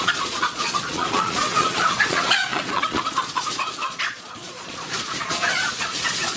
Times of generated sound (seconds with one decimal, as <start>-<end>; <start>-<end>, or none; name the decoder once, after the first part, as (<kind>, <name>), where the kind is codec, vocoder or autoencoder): 0.0-6.4 (vocoder, Vocos)